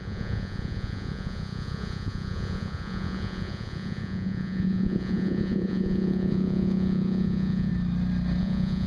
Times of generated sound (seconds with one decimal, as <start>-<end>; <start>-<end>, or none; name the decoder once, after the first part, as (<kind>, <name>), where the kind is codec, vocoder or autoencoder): 0.0-7.7 (vocoder, Vocos); 8.4-8.9